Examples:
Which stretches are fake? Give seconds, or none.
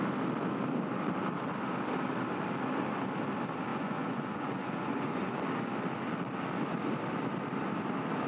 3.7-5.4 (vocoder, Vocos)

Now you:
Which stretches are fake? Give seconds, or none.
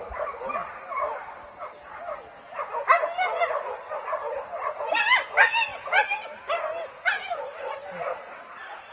none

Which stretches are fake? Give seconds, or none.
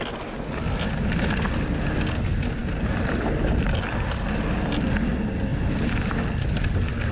none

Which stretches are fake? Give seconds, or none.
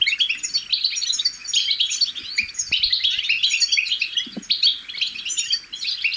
none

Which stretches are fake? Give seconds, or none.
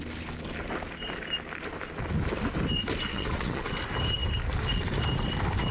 3.1-3.7 (vocoder, Vocos)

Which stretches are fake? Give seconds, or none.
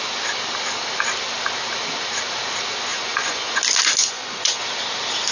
2.9-3.6 (vocoder, Vocos); 4.0-4.6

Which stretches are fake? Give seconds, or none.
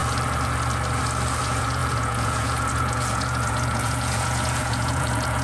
1.4-5.4 (vocoder, Vocos)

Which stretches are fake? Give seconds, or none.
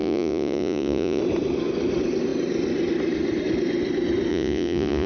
0.0-1.2 (vocoder, Vocos); 4.3-5.1